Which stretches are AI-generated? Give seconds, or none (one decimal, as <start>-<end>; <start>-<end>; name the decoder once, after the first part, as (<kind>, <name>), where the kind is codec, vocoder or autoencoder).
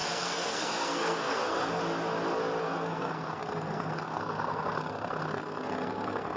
0.0-1.7 (codec, SNAC); 2.6-6.4